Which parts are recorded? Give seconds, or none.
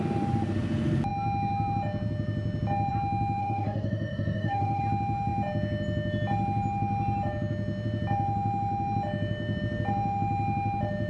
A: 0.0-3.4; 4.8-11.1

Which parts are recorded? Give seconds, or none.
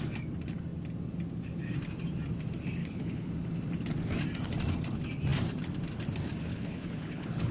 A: 0.0-2.8; 3.3-6.5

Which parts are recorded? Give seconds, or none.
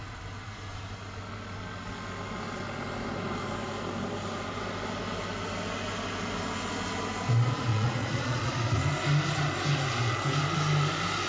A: 0.0-7.7; 8.5-11.3